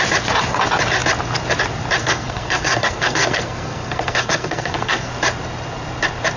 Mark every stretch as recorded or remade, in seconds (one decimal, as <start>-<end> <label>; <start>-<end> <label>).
0.0-2.0 recorded; 2.0-5.1 remade; 5.1-6.4 recorded